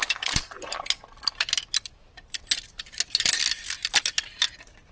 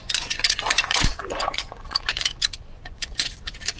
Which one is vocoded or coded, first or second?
second